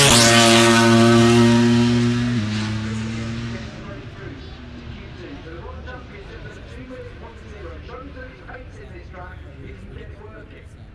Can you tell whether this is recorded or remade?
recorded